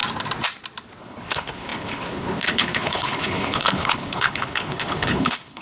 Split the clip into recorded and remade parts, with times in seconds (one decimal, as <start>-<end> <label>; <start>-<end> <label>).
0.0-1.0 recorded; 1.0-5.6 remade